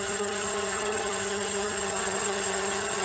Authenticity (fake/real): fake